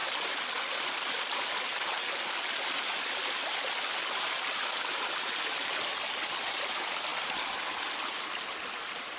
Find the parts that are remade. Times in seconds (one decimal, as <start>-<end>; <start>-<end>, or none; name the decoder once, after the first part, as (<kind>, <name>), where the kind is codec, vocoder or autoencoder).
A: none